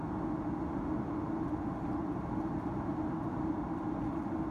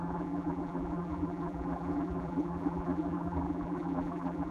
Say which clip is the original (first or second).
first